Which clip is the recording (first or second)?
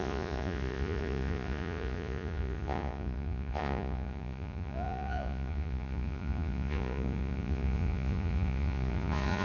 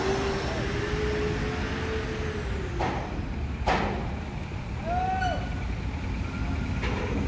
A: second